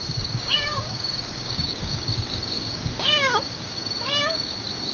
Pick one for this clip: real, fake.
fake